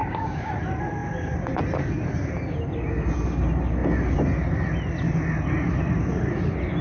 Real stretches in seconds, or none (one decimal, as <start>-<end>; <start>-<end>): 0.5-6.8